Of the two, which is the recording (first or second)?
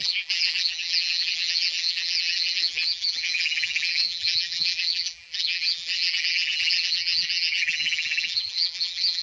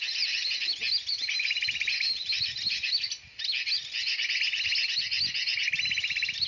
second